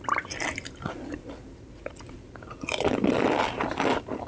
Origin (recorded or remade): recorded